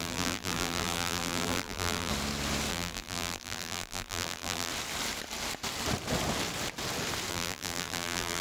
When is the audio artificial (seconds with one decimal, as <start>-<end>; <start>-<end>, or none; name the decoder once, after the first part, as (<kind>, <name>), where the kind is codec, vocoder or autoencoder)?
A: 0.0-2.1 (vocoder, BigVGAN v2); 2.7-4.7; 7.3-8.4